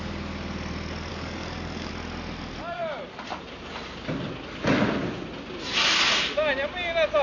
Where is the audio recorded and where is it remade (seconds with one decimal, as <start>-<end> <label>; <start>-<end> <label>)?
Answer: 0.0-1.1 recorded; 1.1-1.9 remade; 1.9-7.2 recorded